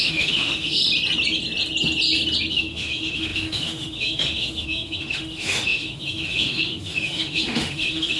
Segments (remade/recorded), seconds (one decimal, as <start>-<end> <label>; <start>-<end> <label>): 0.0-0.8 remade; 0.8-2.5 recorded; 2.5-8.2 remade

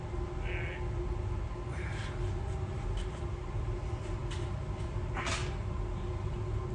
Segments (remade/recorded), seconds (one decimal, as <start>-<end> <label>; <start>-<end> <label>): 0.0-6.7 recorded

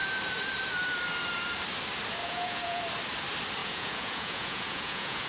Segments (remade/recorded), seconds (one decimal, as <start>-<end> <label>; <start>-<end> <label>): 0.0-2.2 recorded; 2.2-2.8 remade; 2.8-3.6 recorded; 3.6-5.3 remade

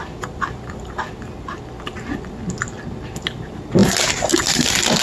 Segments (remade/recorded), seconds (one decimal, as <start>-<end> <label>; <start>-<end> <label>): 0.0-5.0 recorded